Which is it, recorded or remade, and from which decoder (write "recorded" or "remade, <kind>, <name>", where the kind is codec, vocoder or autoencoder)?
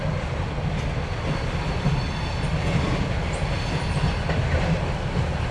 recorded